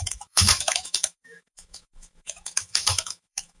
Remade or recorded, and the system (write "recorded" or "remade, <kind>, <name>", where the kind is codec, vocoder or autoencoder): remade, autoencoder, DAC-VAE